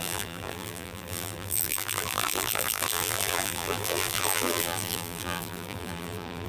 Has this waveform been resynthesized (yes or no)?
yes